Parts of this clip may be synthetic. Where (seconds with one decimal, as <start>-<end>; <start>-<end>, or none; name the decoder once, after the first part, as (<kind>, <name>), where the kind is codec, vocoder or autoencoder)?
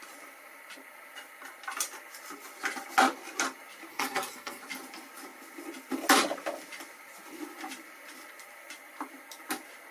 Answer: 3.9-4.6 (codec, SNAC)